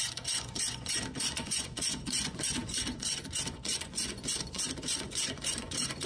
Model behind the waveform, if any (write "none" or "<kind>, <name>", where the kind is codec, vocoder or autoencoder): vocoder, Vocos